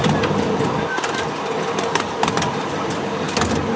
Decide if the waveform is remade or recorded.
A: recorded